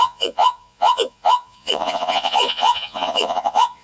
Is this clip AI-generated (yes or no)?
yes